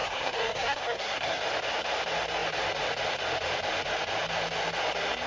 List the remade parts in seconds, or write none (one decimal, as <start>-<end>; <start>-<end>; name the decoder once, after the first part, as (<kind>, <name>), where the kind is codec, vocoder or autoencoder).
0.0-1.4 (codec, SNAC)